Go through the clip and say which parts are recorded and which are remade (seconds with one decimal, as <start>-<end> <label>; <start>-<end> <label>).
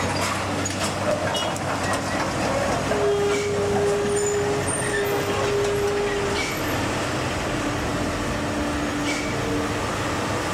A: 0.0-10.5 recorded